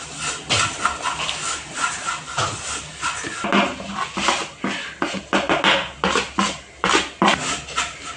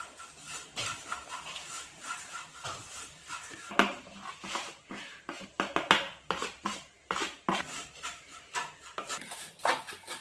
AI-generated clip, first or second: second